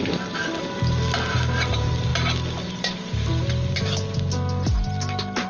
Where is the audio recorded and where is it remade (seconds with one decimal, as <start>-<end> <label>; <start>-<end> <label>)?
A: 0.0-5.5 recorded